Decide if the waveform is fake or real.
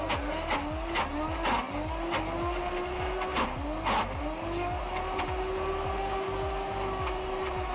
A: real